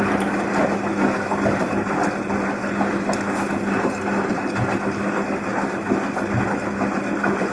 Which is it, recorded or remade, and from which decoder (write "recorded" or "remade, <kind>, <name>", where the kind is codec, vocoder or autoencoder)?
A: recorded